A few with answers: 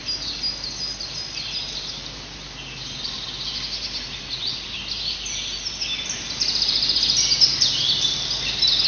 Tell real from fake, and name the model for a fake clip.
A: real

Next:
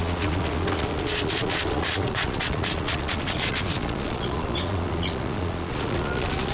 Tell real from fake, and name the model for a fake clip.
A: fake, vocoder, Vocos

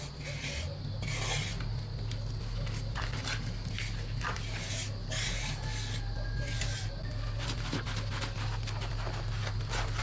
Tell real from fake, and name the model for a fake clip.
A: real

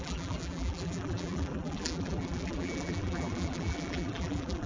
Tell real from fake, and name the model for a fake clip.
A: fake, vocoder, BigVGAN v2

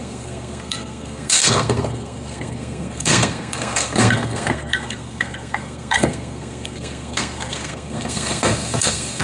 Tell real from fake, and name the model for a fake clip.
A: fake, codec, SNAC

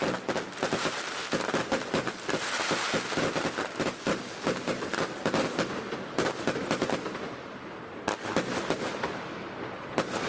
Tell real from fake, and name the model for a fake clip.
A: real